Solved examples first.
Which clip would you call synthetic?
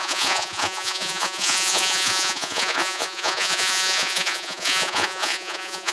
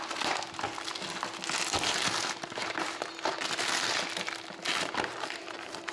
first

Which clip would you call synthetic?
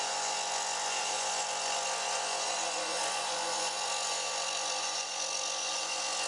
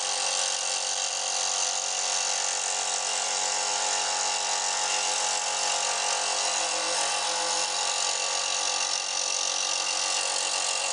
first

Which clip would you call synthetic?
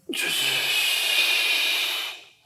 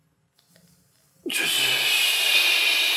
first